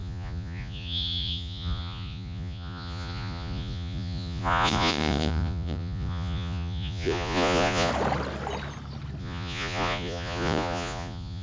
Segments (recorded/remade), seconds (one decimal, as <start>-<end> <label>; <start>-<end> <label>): 0.0-7.9 remade; 7.9-9.2 recorded; 9.2-11.4 remade